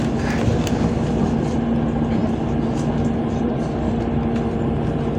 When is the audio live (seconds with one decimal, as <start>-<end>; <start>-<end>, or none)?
0.0-5.2